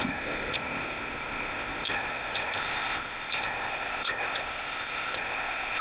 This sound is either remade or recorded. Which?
remade